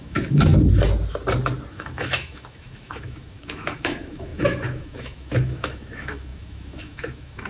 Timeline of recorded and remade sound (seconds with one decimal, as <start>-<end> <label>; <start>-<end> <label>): 0.0-0.5 remade; 0.5-1.7 recorded; 1.7-7.5 remade